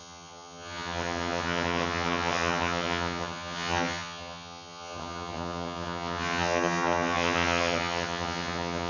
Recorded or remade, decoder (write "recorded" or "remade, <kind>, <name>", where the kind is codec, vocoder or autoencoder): remade, vocoder, HiFi-GAN